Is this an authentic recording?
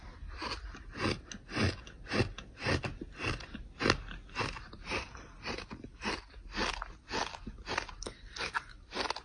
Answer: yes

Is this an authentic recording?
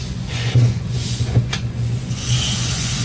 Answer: no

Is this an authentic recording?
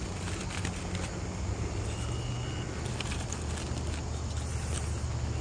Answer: yes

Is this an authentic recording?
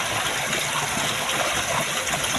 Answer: yes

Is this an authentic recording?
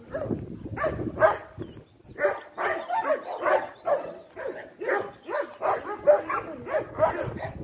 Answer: yes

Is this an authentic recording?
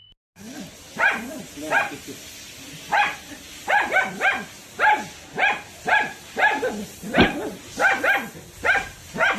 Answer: yes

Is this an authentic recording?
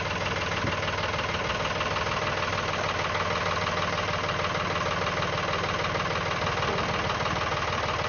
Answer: yes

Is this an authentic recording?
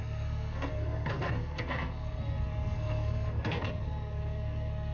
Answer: no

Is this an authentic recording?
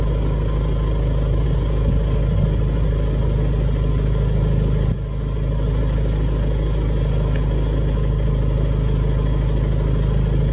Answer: yes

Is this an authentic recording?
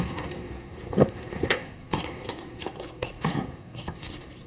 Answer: no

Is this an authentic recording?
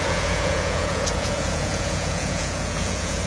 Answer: no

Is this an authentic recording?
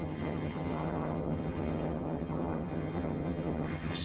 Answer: no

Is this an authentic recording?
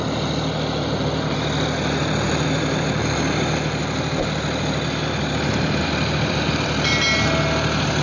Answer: yes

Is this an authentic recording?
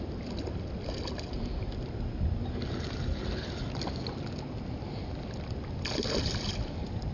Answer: yes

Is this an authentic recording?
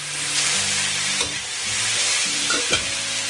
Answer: yes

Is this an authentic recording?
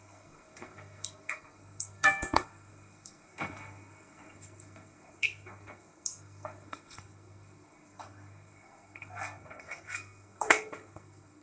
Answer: no